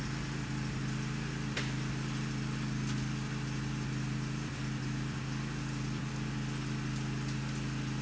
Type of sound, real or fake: real